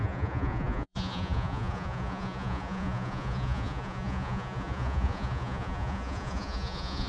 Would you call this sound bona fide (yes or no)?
no